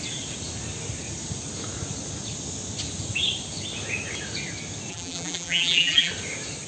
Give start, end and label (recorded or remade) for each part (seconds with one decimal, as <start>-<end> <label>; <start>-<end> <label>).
0.0-4.9 recorded; 4.9-6.1 remade; 6.1-6.7 recorded